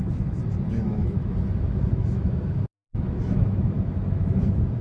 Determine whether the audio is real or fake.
fake